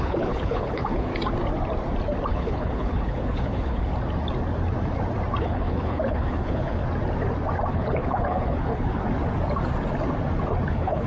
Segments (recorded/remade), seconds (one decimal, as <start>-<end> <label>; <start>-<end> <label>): 0.0-1.1 remade; 1.1-2.3 recorded; 2.3-3.9 remade; 3.9-5.4 recorded; 5.4-6.8 remade; 6.8-7.7 recorded; 7.7-9.0 remade; 9.0-10.7 recorded; 10.7-11.1 remade